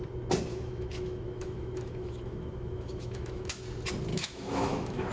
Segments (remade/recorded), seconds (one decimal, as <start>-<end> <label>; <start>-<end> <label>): 0.0-0.5 recorded; 0.5-3.6 remade; 3.6-4.1 recorded; 4.1-5.1 remade